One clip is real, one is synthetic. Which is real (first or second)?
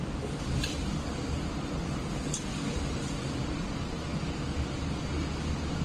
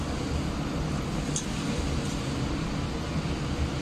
second